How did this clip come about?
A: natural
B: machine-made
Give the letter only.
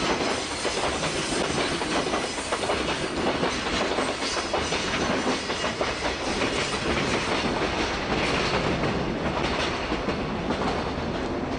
A